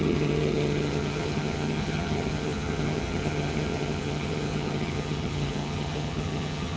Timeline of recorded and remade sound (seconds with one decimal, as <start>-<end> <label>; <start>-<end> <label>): 0.0-6.8 remade

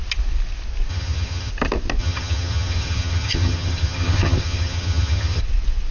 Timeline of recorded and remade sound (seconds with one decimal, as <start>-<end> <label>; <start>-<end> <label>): 0.0-0.9 recorded; 0.9-1.5 remade; 1.5-2.0 recorded; 2.0-5.4 remade; 5.4-5.9 recorded

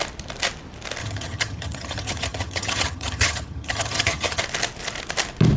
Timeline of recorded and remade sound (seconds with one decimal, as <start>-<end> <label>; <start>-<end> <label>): 0.0-1.0 recorded; 1.0-4.4 remade; 4.4-5.6 recorded

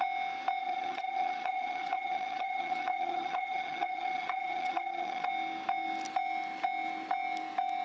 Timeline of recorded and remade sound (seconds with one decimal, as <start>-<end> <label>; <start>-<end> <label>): 0.0-0.6 recorded; 0.6-5.3 remade; 5.3-7.8 recorded

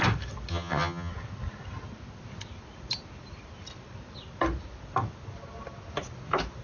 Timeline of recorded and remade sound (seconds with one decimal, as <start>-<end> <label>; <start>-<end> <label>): 0.0-0.5 recorded; 0.5-1.1 remade; 1.1-6.6 recorded

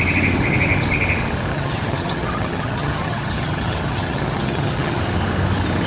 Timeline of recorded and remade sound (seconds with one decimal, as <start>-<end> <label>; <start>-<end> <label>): 0.0-1.5 recorded; 1.5-5.0 remade; 5.0-5.9 recorded

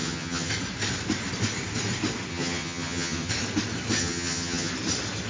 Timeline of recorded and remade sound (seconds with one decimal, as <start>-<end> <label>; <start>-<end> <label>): 0.0-0.5 remade; 0.5-2.3 recorded; 2.3-3.3 remade; 3.3-4.0 recorded; 4.0-4.7 remade; 4.7-5.3 recorded

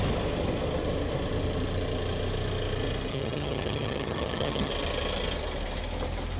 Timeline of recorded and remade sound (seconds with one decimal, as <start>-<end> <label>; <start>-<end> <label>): 0.0-3.1 recorded; 3.1-4.7 remade; 4.7-6.4 recorded